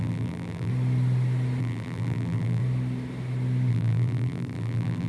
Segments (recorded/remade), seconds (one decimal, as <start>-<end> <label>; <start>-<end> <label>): 0.0-0.7 remade; 0.7-1.6 recorded; 1.6-2.6 remade; 2.6-3.7 recorded; 3.7-5.1 remade